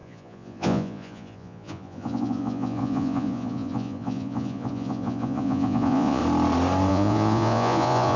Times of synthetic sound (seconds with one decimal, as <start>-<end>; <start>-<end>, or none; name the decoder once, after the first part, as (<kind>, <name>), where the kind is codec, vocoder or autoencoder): 0.0-6.2 (vocoder, Vocos); 6.9-8.2